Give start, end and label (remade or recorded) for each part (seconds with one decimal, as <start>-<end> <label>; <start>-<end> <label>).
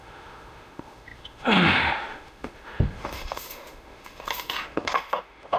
0.0-5.6 remade